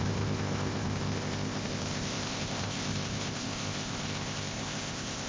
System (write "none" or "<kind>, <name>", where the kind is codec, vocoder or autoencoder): codec, ZipCodec